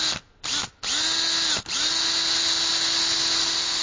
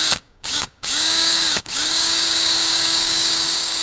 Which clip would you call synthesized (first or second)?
second